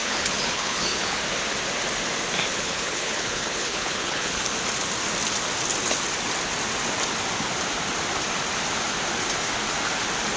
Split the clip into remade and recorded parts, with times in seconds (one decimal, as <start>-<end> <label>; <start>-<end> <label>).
0.0-1.2 remade; 1.2-2.5 recorded; 2.5-4.4 remade; 4.4-10.4 recorded